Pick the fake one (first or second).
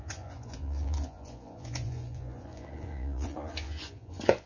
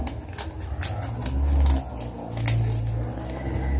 first